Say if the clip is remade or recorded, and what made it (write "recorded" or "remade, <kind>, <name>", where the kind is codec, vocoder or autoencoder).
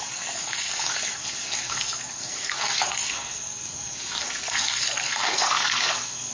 remade, codec, SNAC